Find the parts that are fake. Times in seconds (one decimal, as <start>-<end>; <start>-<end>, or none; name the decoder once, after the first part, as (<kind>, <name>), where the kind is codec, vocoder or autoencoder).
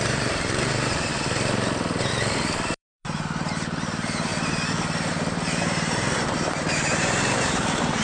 0.0-1.1 (vocoder, BigVGAN v2); 2.1-4.3; 5.6-8.0